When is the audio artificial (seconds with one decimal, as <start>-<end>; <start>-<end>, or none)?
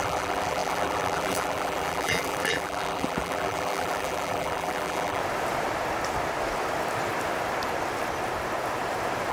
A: 0.0-5.2